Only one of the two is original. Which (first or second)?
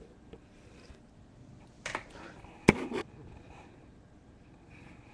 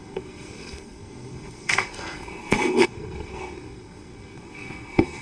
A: first